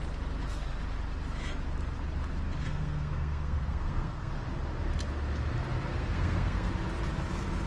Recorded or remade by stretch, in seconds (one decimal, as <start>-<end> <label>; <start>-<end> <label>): 0.0-2.6 recorded; 2.6-4.3 remade; 4.3-5.9 recorded; 5.9-6.7 remade; 6.7-7.7 recorded